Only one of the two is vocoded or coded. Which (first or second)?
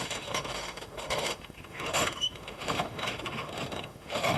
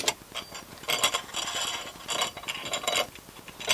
first